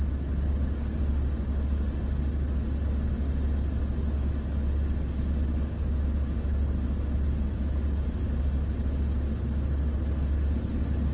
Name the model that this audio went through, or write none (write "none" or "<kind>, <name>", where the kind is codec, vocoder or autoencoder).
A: none